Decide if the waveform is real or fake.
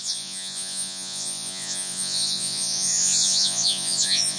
fake